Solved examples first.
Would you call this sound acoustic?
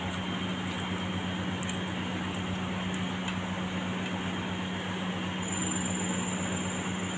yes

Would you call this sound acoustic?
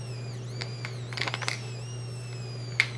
yes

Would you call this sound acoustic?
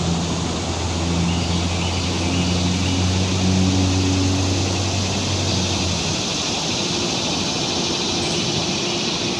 yes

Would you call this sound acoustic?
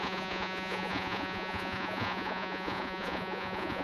no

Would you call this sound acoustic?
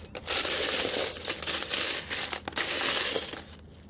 yes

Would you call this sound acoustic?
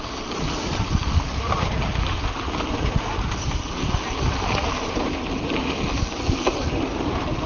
yes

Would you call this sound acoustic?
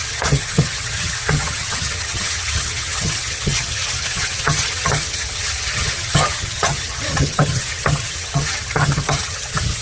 no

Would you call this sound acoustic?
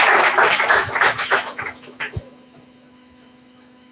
no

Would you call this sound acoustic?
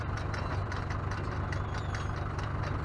yes